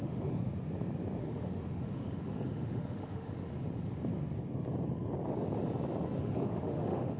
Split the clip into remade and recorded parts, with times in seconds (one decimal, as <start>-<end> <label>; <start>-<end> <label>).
0.0-0.5 remade; 0.5-1.2 recorded; 1.2-3.5 remade; 3.5-6.2 recorded; 6.2-7.2 remade